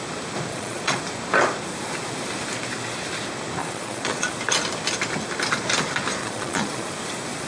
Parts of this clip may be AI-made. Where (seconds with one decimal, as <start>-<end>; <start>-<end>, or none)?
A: 0.5-1.0; 3.6-4.3; 6.2-6.9